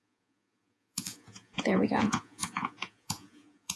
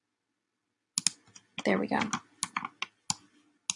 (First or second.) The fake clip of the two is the first